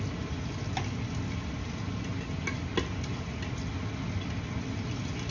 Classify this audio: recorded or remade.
recorded